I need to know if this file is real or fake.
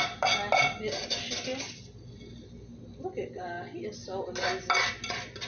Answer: real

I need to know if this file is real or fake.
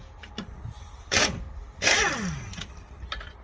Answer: real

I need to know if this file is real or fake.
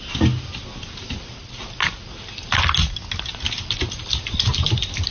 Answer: real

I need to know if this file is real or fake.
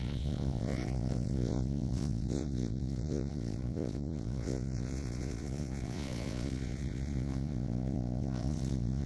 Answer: fake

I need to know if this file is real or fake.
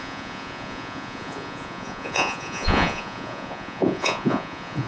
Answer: fake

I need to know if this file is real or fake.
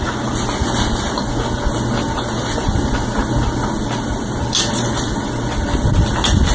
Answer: real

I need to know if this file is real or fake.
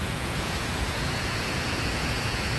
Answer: fake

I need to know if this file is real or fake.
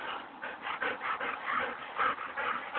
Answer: real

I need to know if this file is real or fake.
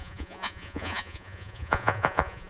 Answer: fake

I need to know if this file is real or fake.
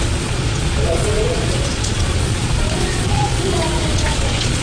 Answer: fake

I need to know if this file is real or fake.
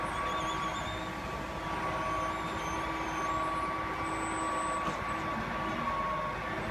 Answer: real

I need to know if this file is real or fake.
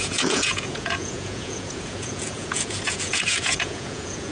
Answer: fake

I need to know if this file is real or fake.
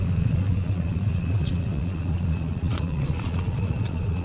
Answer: fake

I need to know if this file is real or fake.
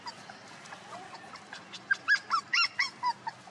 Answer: real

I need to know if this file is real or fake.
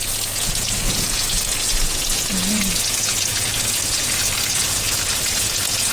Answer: fake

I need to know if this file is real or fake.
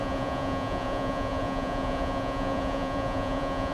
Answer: fake